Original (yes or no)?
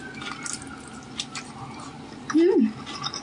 yes